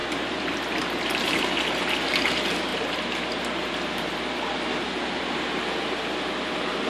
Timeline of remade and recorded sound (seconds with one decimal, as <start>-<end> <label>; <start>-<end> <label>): 0.0-6.9 recorded